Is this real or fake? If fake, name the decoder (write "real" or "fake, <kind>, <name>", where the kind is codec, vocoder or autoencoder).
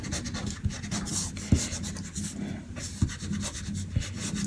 real